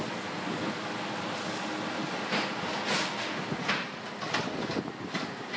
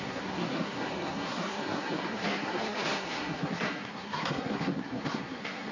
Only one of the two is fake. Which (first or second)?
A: second